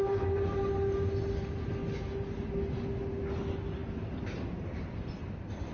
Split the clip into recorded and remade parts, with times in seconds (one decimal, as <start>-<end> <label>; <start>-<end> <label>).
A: 0.0-5.7 recorded